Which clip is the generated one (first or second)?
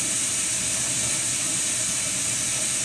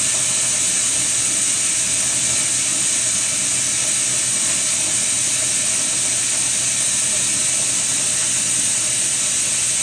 first